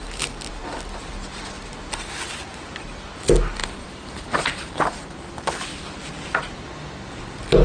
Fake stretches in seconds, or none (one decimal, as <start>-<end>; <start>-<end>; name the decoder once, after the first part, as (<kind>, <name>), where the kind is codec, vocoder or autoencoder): 3.6-4.8 (vocoder, BigVGAN v2)